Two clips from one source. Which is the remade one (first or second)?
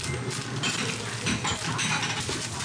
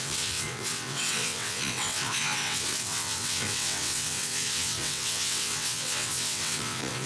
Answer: second